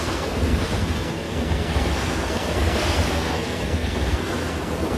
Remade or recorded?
remade